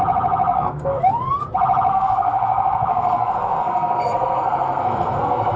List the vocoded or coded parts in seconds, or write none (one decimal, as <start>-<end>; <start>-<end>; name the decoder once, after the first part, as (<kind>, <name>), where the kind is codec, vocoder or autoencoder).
0.5-1.0 (codec, SNAC); 1.9-5.6